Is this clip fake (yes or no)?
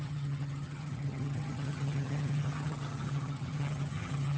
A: yes